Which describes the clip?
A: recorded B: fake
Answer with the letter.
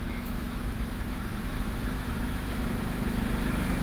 B